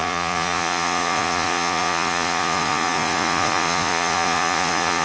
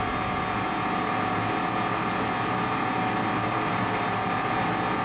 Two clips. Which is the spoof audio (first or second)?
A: first